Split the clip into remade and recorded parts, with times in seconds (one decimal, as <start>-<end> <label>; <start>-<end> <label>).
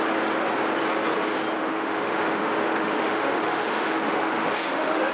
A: 0.0-1.6 recorded; 1.6-5.1 remade